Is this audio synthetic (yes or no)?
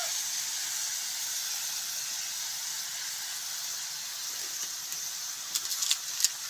no